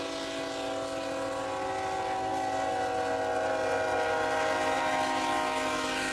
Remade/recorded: recorded